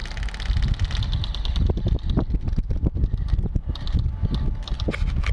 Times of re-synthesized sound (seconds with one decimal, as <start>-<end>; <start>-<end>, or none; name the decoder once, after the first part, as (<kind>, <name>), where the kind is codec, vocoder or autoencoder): none